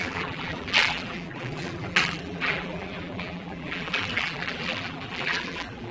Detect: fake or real fake